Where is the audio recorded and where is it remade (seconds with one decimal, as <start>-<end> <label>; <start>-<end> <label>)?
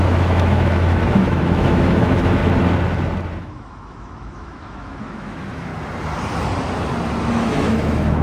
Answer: 0.0-2.4 remade; 2.4-3.4 recorded; 3.4-5.7 remade; 5.7-7.3 recorded; 7.3-8.2 remade